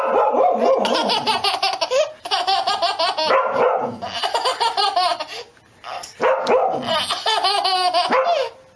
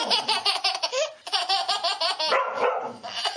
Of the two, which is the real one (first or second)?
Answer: first